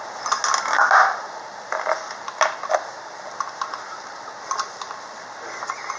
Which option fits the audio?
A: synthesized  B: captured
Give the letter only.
B